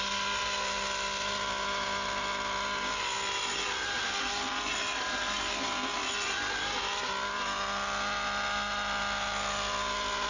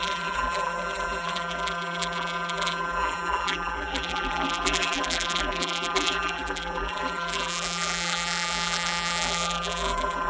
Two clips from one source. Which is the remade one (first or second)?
second